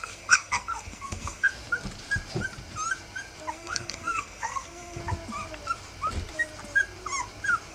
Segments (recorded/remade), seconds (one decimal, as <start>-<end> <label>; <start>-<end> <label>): 0.0-1.5 remade; 1.5-3.5 recorded; 3.5-5.0 remade; 5.0-7.7 recorded